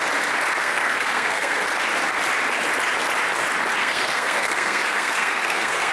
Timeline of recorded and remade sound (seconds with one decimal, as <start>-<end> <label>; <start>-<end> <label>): 0.0-0.6 recorded; 0.6-1.6 remade; 1.6-3.8 recorded; 3.8-5.9 remade